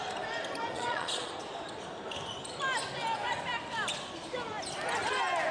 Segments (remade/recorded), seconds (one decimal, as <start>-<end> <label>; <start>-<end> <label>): 0.0-0.7 recorded; 0.7-1.3 remade; 1.3-5.5 recorded